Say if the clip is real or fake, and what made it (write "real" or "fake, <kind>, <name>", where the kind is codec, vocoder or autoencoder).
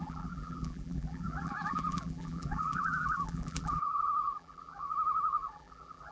fake, vocoder, BigVGAN v2